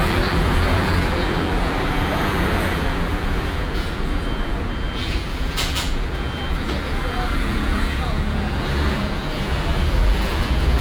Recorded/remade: remade